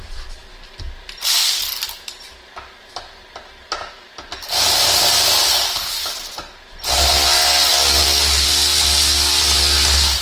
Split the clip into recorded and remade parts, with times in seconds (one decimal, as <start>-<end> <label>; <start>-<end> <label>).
0.0-10.2 recorded